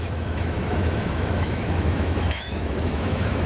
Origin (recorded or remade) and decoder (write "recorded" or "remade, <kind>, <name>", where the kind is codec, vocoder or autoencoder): remade, autoencoder, DAC-VAE